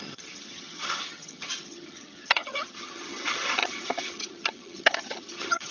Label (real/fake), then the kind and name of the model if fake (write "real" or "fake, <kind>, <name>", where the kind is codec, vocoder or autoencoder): fake, vocoder, HiFi-GAN